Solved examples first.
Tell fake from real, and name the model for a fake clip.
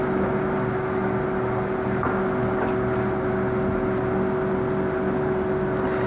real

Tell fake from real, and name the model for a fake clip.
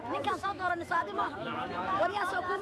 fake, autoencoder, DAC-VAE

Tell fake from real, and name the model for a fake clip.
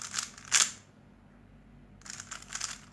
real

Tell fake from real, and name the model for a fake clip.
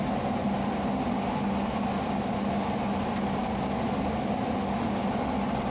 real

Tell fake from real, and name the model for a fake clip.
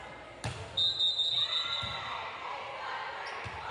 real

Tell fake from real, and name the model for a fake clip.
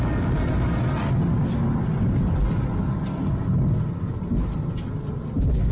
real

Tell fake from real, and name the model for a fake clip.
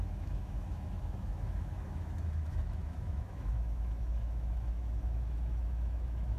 fake, autoencoder, DAC-VAE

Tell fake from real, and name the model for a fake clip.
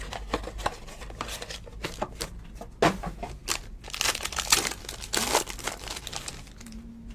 real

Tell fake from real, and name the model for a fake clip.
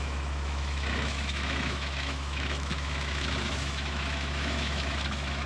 fake, autoencoder, DAC-VAE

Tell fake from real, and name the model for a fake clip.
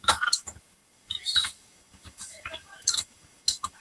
fake, autoencoder, DAC-VAE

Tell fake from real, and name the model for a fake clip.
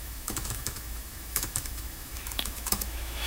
fake, autoencoder, DAC-VAE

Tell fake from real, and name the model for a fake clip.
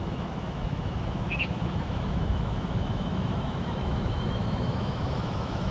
fake, autoencoder, DAC-VAE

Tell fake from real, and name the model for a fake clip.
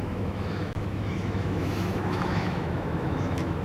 fake, autoencoder, DAC-VAE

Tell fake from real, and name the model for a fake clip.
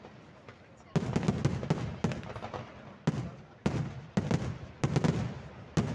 real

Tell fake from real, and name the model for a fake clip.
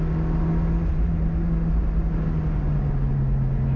real